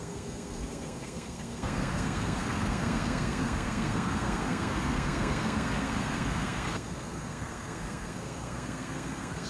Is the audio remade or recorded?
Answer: remade